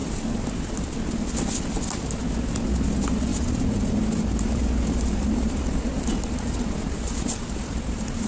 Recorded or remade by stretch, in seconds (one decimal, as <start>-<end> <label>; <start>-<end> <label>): 0.0-3.3 recorded; 3.3-8.3 remade